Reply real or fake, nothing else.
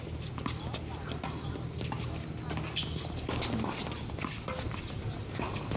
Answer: real